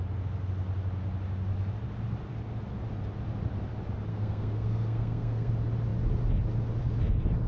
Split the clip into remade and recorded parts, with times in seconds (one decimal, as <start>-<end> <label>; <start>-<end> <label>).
0.0-4.1 recorded; 4.1-5.5 remade; 5.5-7.5 recorded